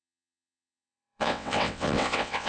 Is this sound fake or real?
fake